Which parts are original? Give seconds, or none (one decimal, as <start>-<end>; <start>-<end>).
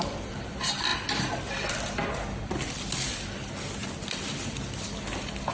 none